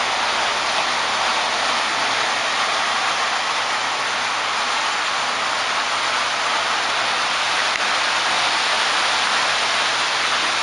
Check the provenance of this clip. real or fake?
real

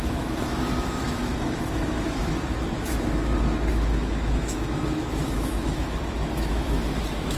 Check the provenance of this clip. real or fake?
fake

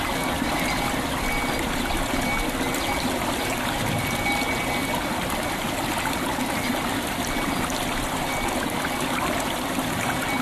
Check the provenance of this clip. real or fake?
real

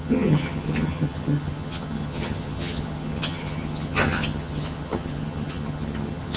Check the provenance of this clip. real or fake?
fake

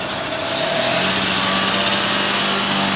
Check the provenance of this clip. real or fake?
real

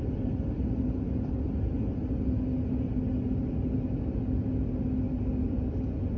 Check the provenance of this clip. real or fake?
real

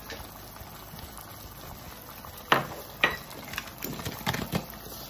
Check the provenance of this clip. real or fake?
real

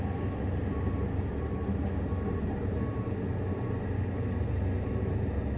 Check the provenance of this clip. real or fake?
real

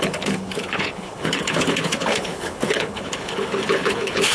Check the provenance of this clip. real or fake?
fake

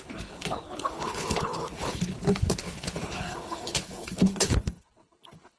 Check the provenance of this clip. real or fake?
fake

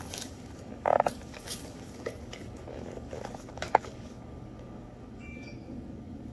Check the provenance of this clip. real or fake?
fake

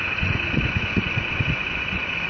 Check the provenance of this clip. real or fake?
fake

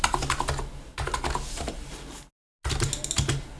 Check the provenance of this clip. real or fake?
real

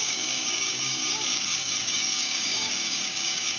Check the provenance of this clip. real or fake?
fake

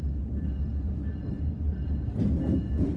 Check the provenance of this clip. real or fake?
real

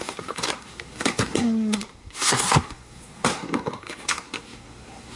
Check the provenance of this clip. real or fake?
fake